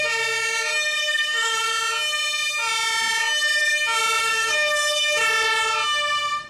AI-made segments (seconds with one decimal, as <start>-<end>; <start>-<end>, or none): 1.0-1.7; 4.2-5.2